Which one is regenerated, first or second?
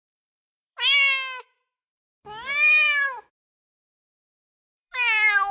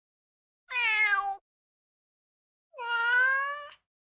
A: first